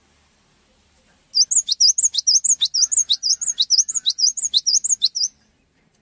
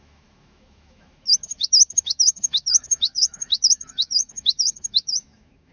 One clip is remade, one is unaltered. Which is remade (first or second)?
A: second